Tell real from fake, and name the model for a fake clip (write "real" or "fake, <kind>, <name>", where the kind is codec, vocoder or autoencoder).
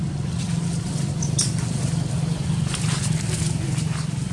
real